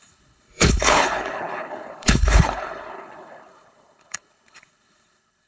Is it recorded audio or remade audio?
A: remade